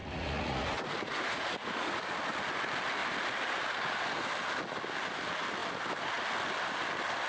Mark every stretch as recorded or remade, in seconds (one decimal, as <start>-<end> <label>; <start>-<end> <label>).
0.0-2.0 remade; 2.0-7.3 recorded